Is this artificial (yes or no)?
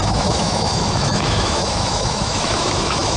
yes